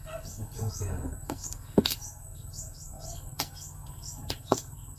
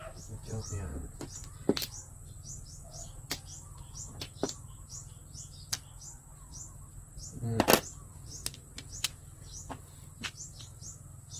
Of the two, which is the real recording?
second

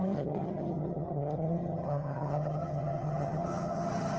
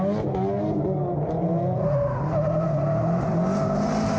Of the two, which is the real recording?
second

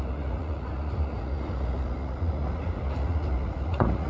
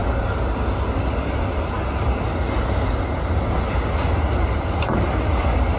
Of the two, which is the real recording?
second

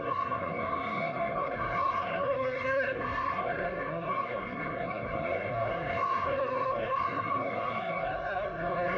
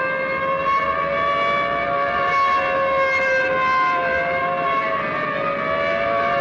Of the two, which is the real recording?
second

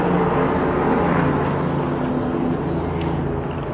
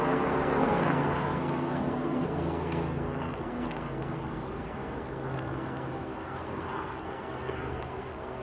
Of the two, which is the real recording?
first